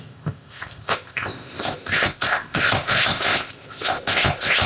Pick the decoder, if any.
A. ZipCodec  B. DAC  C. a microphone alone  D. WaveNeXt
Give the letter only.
A